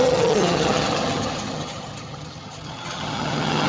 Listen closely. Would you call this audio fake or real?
fake